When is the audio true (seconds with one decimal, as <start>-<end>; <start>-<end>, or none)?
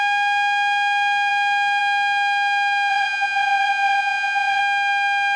0.0-2.9; 4.6-5.4